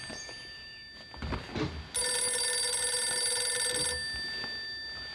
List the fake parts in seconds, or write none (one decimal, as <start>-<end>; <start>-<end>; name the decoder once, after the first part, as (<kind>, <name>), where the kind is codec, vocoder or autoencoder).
none